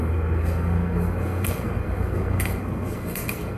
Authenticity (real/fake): fake